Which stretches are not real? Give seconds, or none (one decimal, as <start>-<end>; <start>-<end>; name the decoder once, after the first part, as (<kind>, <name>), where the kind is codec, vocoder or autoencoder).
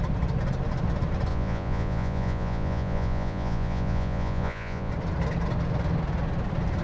1.3-4.9 (vocoder, Vocos)